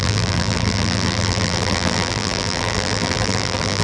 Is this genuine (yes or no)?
no